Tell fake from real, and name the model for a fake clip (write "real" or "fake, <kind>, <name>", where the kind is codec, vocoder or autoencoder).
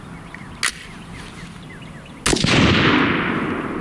real